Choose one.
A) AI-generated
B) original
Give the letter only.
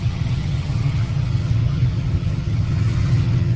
A